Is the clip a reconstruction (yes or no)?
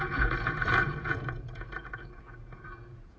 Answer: yes